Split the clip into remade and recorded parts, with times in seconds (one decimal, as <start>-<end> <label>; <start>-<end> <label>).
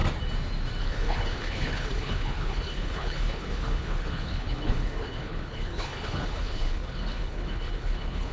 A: 0.0-0.8 recorded; 0.8-8.3 remade